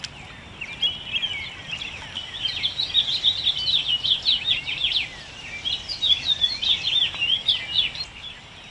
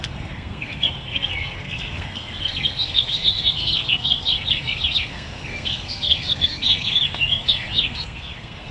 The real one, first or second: first